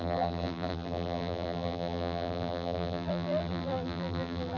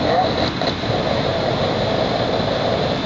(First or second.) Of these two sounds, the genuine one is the second